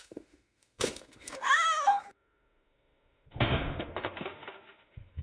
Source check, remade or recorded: remade